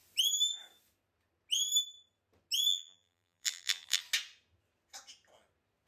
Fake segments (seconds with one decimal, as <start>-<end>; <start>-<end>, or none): 2.7-4.0